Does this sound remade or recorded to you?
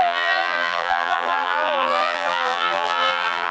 remade